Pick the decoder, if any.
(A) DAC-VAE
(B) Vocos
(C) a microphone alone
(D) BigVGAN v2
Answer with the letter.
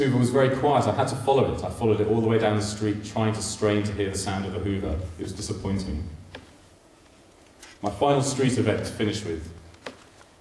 B